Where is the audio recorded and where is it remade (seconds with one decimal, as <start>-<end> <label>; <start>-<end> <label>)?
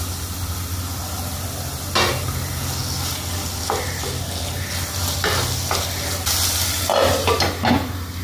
0.0-8.2 recorded